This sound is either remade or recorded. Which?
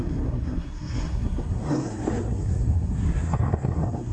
remade